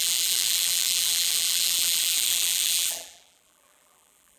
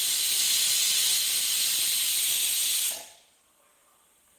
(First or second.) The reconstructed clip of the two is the first